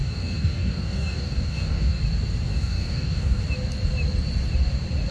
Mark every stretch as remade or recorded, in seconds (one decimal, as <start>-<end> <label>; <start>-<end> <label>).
0.0-2.0 remade; 2.0-2.5 recorded; 2.5-3.4 remade; 3.4-5.1 recorded